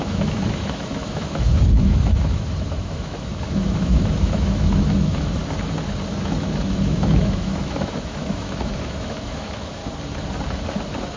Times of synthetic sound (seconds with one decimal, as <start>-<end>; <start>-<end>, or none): 0.0-5.4; 6.1-9.8